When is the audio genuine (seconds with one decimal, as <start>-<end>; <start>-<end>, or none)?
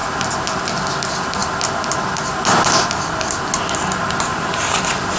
0.0-5.2